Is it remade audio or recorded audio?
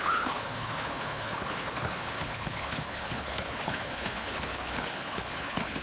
remade